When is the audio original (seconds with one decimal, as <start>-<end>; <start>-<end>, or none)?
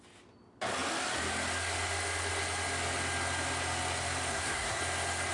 0.0-4.3; 4.8-5.3